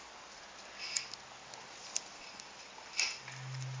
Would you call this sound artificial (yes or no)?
no